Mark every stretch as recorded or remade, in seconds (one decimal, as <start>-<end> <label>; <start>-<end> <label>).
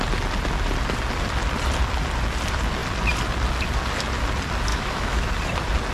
0.0-4.7 recorded; 4.7-5.3 remade; 5.3-5.9 recorded